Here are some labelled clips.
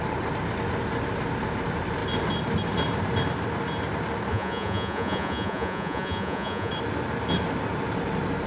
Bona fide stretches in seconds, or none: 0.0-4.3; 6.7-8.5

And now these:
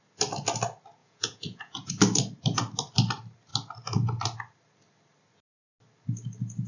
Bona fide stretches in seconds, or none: 0.0-1.0; 1.9-6.7

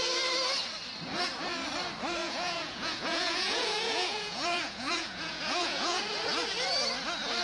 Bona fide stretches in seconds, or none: 0.0-2.2; 6.0-7.4

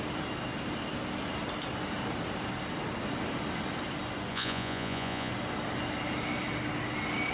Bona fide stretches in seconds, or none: 0.0-4.3; 5.3-7.3

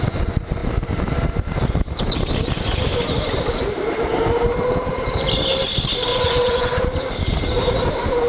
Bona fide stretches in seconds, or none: 0.0-6.1; 6.8-8.3